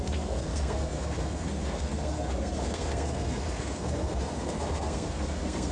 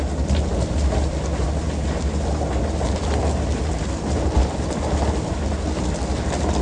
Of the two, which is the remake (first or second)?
first